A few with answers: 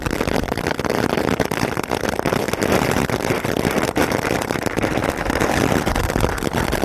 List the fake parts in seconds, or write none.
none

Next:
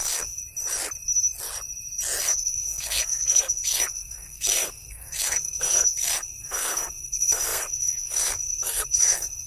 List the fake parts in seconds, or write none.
0.0-0.4; 2.2-9.5

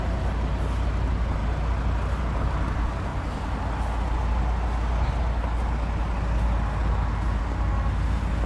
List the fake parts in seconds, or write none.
none

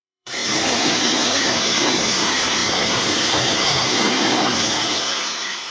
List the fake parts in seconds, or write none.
0.0-5.7